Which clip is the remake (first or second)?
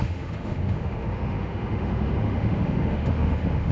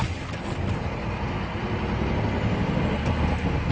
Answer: first